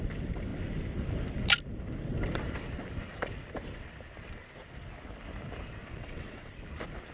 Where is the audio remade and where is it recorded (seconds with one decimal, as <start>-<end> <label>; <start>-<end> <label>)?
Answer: 0.0-5.8 recorded; 5.8-6.5 remade; 6.5-7.1 recorded